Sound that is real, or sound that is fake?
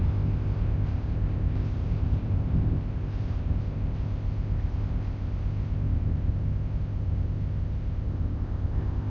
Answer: fake